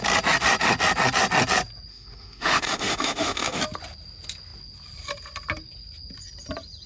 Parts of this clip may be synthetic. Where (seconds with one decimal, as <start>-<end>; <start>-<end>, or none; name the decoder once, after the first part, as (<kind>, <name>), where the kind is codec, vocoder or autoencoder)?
1.9-3.6 (autoencoder, DAC-VAE)